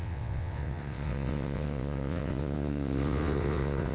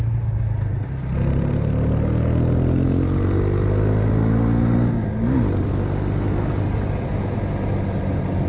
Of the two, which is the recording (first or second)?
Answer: second